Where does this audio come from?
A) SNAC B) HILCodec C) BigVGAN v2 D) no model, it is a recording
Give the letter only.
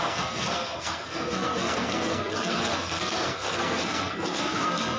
A